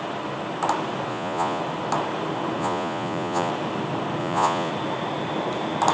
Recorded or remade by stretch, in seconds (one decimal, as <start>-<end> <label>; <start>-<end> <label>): 0.0-1.1 recorded; 1.1-1.6 remade; 1.6-2.6 recorded; 2.6-3.5 remade; 3.5-4.2 recorded; 4.2-4.7 remade; 4.7-5.9 recorded